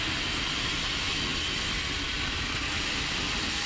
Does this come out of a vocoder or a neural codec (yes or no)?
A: no